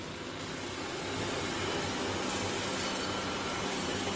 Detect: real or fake real